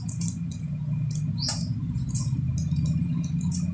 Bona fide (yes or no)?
yes